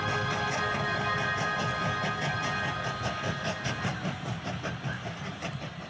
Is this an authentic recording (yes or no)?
yes